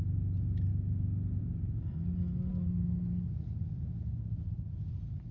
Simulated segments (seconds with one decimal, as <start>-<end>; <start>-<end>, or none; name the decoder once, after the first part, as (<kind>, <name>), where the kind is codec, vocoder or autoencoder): none